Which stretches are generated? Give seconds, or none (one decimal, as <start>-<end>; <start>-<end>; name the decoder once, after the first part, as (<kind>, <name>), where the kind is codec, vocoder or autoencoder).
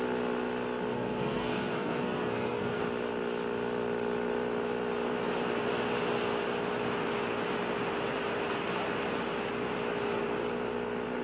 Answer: 0.9-2.8 (codec, SNAC)